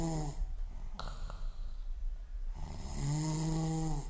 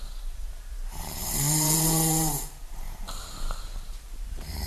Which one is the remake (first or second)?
second